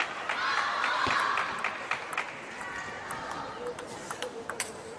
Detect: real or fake real